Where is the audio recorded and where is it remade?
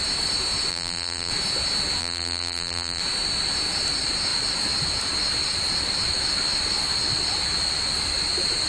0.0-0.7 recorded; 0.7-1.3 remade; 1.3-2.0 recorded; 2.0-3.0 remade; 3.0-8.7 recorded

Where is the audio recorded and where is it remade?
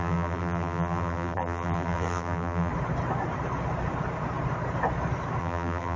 0.0-2.7 remade; 2.7-5.4 recorded; 5.4-6.0 remade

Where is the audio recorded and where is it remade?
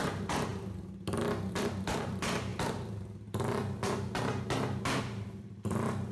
0.0-0.5 remade; 0.5-1.5 recorded; 1.5-2.5 remade; 2.5-5.0 recorded; 5.0-6.1 remade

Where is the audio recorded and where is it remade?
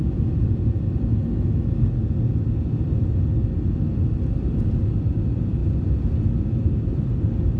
0.0-1.2 remade; 1.2-2.0 recorded; 2.0-7.6 remade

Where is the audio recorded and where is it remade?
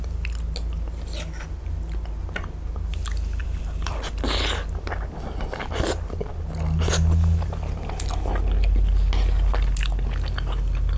0.0-3.4 recorded; 3.4-4.1 remade; 4.1-11.0 recorded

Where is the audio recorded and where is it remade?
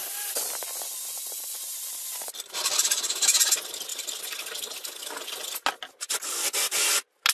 0.0-0.8 remade; 0.8-2.1 recorded; 2.1-2.7 remade; 2.7-3.9 recorded; 3.9-5.3 remade; 5.3-7.3 recorded